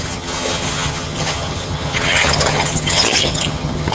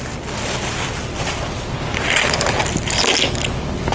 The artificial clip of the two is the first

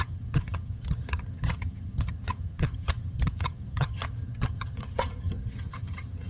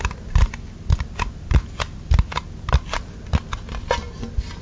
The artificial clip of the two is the first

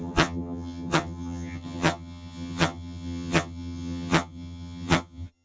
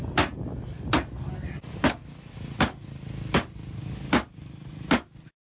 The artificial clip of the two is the first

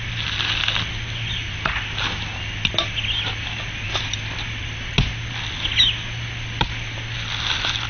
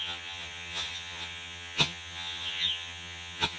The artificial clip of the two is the second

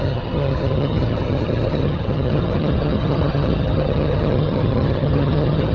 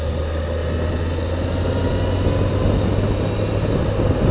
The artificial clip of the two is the first